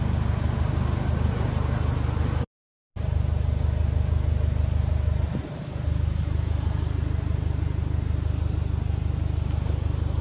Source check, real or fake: real